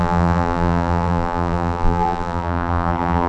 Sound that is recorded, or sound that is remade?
remade